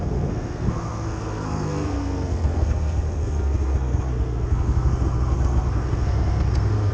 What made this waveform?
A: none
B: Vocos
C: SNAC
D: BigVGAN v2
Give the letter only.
C